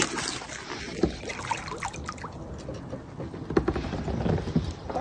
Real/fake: real